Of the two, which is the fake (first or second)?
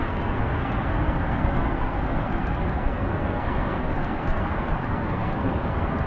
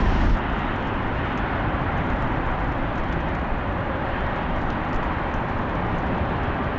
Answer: first